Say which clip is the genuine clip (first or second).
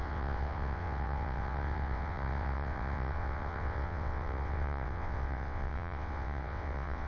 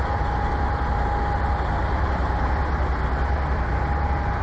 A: second